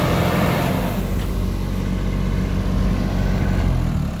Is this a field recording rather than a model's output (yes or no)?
yes